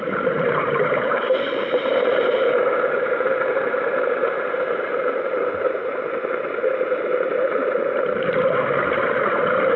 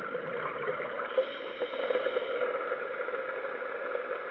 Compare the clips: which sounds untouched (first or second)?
second